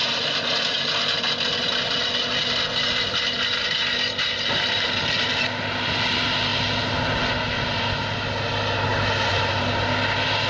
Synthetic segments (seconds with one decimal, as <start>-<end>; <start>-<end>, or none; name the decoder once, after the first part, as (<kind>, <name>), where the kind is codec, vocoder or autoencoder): 0.0-0.5 (vocoder, BigVGAN v2); 8.9-9.6